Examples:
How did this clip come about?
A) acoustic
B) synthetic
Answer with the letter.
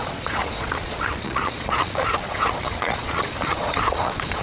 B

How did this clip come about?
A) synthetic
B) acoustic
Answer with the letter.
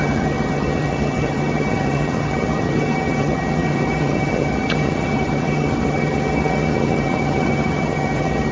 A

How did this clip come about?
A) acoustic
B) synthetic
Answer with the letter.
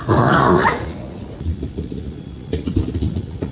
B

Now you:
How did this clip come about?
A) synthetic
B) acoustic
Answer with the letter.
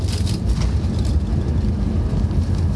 B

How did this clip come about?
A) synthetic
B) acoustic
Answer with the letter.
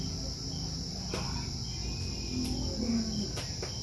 B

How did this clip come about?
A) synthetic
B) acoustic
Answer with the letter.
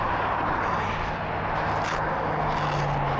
B